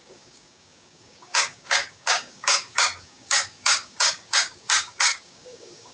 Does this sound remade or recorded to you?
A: remade